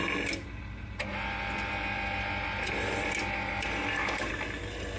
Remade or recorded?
recorded